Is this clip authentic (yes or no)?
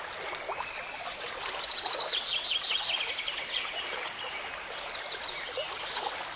yes